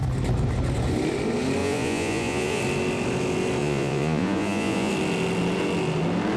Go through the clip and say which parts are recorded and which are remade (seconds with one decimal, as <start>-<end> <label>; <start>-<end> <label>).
0.0-1.6 recorded; 1.6-2.6 remade; 2.6-3.6 recorded; 3.6-4.9 remade; 4.9-6.4 recorded